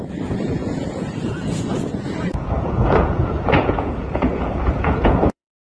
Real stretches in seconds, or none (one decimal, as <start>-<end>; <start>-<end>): none